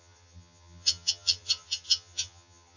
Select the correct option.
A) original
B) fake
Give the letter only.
B